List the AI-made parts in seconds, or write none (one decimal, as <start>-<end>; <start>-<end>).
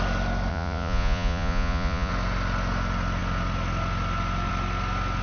0.5-2.1